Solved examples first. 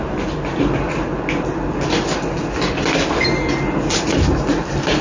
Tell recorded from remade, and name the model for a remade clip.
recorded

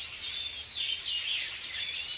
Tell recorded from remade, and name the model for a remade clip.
recorded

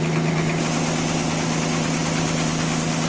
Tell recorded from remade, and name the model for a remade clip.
recorded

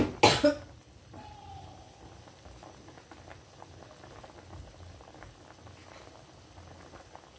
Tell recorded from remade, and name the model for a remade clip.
recorded